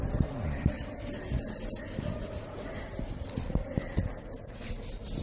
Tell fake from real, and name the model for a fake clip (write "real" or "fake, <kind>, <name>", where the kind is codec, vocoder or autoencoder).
real